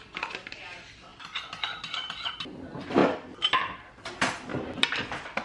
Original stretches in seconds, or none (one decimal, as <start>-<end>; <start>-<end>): 0.0-1.1; 2.3-3.0; 4.1-4.5; 5.0-5.4